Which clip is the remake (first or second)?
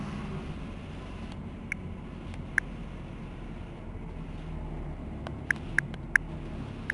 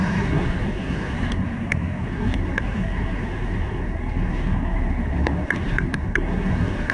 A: second